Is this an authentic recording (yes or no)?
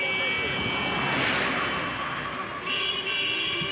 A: yes